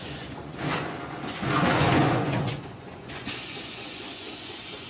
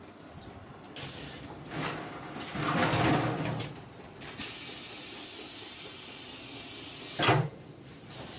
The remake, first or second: first